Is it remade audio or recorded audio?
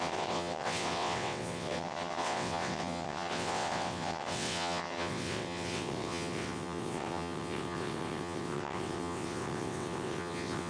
remade